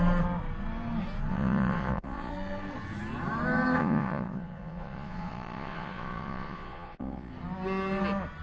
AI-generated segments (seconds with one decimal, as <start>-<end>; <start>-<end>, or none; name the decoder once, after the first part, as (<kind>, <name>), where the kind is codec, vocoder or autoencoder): 1.3-2.3 (vocoder, Vocos); 3.8-7.3